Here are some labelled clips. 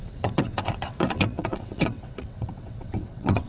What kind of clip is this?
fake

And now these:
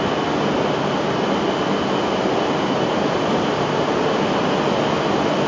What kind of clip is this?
real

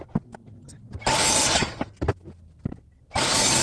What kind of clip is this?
real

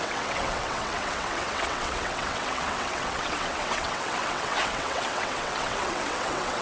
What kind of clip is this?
fake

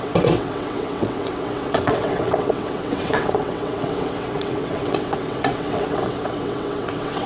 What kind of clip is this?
fake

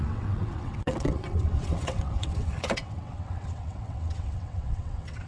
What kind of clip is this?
fake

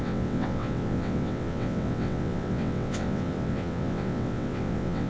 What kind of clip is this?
fake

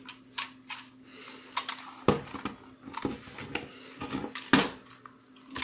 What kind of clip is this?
real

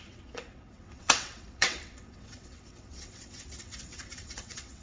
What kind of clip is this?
fake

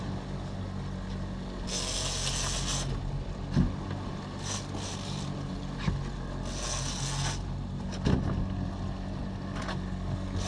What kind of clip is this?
real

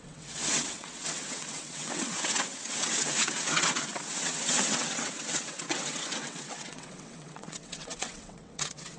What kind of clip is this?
fake